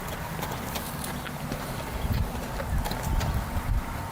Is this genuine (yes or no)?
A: yes